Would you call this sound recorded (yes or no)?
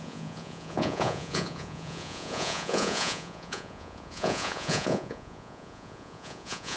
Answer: no